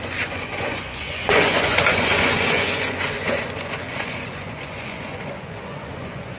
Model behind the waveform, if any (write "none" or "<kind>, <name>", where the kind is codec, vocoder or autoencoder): vocoder, Vocos